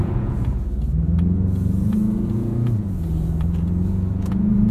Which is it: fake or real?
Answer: fake